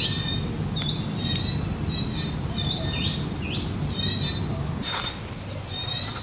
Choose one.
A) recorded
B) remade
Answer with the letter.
B